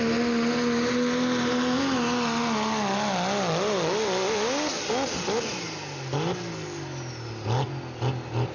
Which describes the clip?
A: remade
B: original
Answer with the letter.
B